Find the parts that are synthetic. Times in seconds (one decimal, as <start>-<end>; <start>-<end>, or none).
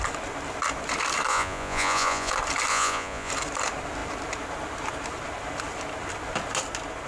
1.3-2.3; 2.7-3.3